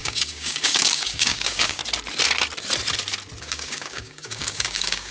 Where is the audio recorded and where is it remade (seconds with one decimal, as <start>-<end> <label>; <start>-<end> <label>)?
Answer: 0.0-1.8 remade; 1.8-3.4 recorded; 3.4-5.1 remade